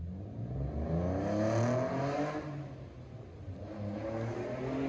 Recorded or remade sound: recorded